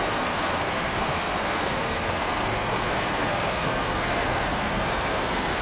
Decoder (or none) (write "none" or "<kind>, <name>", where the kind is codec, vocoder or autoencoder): codec, SNAC